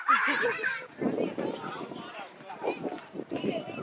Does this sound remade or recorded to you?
remade